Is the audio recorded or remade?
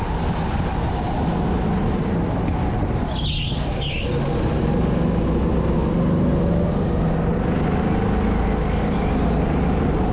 recorded